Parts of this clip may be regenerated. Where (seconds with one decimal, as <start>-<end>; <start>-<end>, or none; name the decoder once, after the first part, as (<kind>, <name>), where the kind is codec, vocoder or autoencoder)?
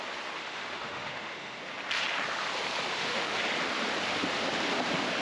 0.4-1.6 (autoencoder, DAC-VAE); 2.9-3.4